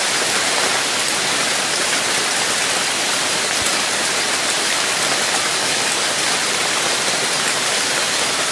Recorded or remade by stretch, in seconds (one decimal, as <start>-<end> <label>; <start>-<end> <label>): 0.0-5.6 recorded; 5.6-6.1 remade; 6.1-8.5 recorded